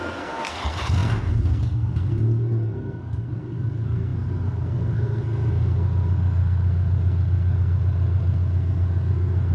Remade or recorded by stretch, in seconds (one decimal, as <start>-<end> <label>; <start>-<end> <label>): 0.0-9.5 remade